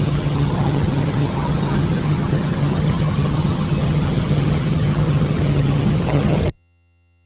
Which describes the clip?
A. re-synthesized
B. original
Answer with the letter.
A